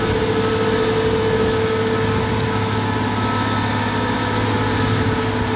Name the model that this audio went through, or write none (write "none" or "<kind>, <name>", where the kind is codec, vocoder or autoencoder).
none